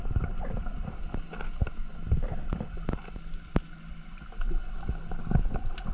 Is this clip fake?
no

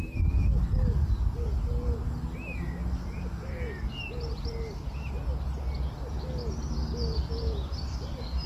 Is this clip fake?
no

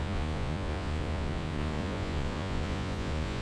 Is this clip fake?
yes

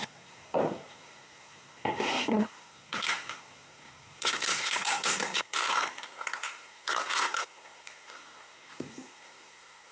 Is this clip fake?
yes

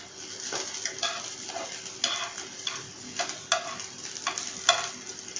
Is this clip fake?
no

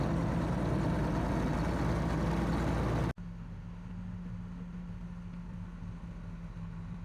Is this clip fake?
no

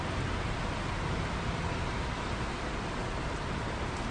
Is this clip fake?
no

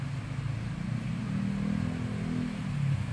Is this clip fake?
no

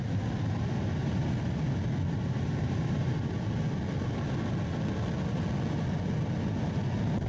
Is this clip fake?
no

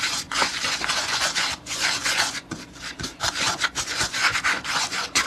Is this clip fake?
yes